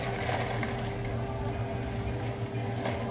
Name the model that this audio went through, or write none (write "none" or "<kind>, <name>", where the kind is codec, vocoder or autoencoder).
none